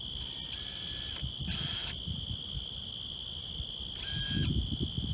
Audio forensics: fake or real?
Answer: real